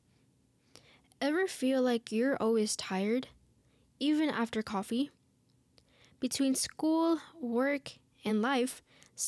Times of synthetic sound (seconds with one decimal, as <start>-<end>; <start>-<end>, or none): 8.3-8.9